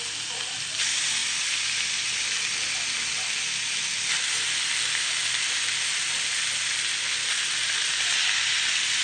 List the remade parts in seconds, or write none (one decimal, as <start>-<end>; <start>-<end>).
none